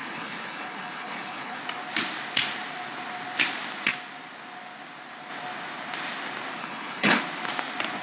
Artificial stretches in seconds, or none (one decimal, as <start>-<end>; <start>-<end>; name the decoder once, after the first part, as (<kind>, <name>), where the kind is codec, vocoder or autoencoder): 0.0-1.6 (codec, HILCodec); 6.6-7.2